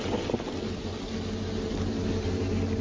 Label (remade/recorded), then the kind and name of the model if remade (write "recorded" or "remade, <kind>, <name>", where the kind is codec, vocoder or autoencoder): recorded